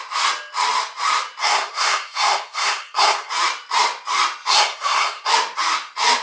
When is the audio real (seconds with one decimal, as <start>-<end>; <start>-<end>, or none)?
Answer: 0.0-1.4; 3.3-4.5; 5.3-6.2